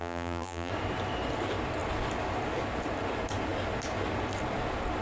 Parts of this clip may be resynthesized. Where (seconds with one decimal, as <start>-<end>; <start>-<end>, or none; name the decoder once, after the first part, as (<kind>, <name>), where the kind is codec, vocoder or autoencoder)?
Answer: 0.0-0.7 (vocoder, BigVGAN v2)

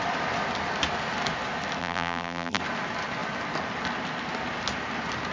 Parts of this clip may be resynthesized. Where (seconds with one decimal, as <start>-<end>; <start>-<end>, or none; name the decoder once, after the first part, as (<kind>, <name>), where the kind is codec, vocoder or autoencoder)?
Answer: 1.8-2.6 (vocoder, BigVGAN v2)

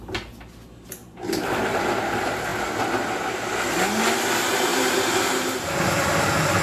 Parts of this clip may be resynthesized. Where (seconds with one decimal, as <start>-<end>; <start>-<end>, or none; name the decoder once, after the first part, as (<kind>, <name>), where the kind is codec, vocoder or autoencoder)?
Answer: 1.0-1.9 (vocoder, BigVGAN v2); 4.7-6.1